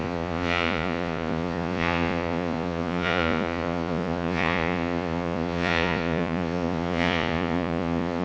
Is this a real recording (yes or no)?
no